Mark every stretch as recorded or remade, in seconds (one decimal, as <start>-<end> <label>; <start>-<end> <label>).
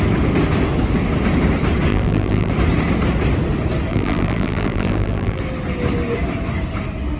0.0-1.9 recorded; 1.9-2.5 remade; 2.5-3.9 recorded; 3.9-5.4 remade; 5.4-7.2 recorded